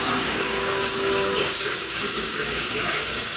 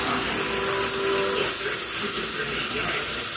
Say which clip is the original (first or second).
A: second